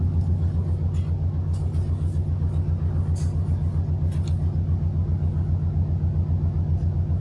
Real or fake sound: real